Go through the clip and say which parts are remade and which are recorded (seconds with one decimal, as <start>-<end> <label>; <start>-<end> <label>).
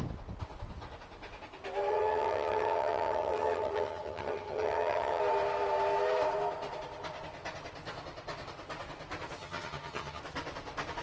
0.0-1.9 recorded; 1.9-5.2 remade; 5.2-9.4 recorded; 9.4-10.2 remade; 10.2-11.0 recorded